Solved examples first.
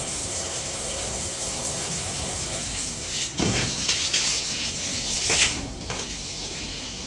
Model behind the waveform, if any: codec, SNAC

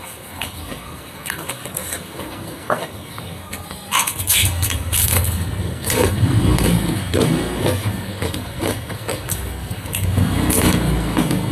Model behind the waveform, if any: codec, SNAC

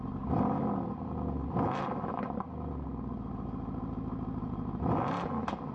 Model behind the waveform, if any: none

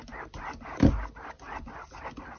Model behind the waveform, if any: none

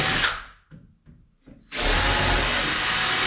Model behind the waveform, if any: none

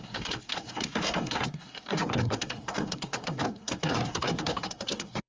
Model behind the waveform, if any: codec, SNAC